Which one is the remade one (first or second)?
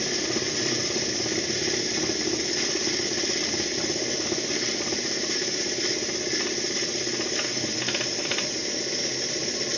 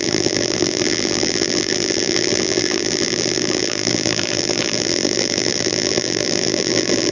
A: second